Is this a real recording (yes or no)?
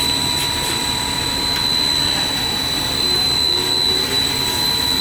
yes